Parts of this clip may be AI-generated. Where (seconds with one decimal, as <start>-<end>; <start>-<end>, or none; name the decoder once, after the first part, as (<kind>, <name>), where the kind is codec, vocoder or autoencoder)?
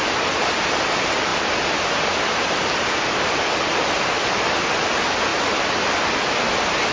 none